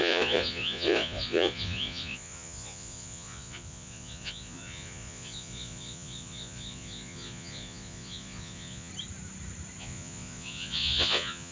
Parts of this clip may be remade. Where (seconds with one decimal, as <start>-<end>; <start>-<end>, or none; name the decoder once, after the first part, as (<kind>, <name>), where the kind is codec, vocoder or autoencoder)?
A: 0.0-8.9 (vocoder, Vocos); 9.8-11.5